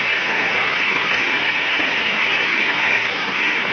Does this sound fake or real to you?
fake